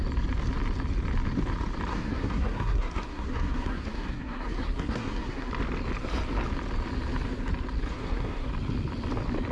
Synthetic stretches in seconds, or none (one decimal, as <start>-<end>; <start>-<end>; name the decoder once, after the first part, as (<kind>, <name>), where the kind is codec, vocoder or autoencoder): 1.9-5.5 (codec, SNAC); 7.9-8.5